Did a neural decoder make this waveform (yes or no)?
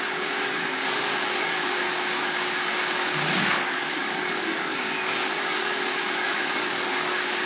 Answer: yes